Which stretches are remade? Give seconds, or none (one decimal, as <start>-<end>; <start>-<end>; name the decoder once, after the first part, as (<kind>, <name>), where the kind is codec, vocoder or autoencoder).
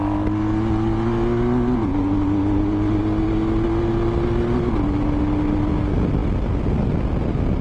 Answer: none